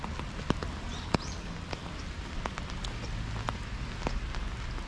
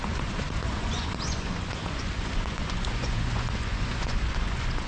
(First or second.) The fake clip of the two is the second